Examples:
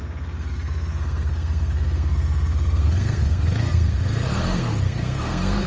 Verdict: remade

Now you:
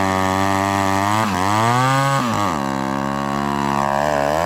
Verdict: recorded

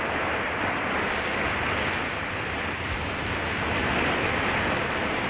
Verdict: recorded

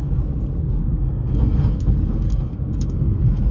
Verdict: remade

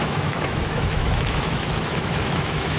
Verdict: remade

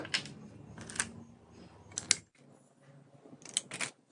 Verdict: recorded